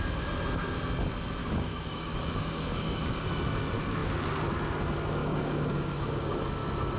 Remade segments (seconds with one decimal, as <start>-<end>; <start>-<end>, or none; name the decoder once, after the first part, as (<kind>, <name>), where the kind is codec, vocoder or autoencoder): 1.4-3.3 (codec, DAC); 5.2-6.2